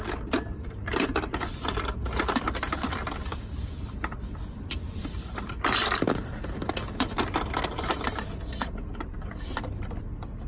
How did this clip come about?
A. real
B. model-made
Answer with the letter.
B